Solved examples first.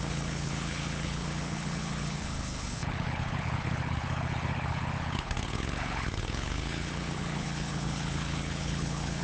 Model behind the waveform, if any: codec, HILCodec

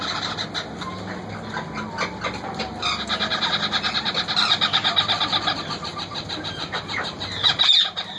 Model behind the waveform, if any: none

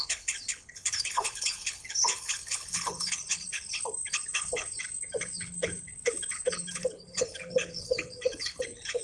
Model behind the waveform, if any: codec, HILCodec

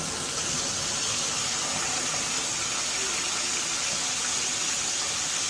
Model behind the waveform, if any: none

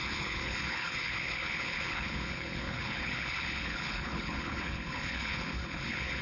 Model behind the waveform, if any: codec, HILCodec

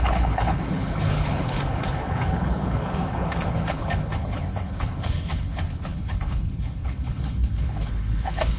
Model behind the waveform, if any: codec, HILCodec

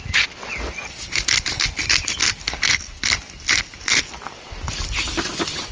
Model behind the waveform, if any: none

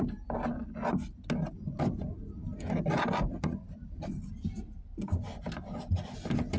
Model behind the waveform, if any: none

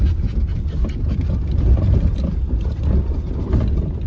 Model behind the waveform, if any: none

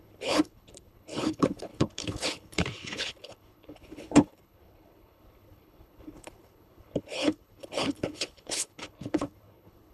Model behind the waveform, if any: codec, HILCodec